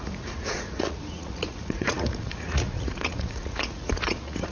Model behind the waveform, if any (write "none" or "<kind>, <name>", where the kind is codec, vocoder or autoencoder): vocoder, Vocos